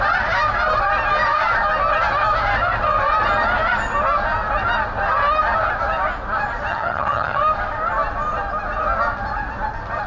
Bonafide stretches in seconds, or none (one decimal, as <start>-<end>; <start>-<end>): 0.0-6.7; 7.4-10.1